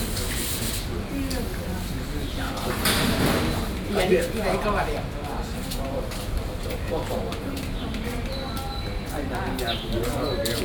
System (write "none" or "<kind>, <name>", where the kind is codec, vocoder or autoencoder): none